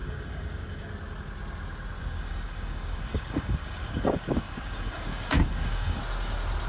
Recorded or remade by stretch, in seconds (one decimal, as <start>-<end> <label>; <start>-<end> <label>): 0.0-0.9 remade; 0.9-2.0 recorded; 2.0-6.0 remade; 6.0-6.7 recorded